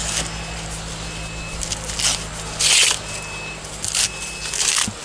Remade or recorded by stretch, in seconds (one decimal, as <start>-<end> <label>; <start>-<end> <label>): 0.0-5.0 recorded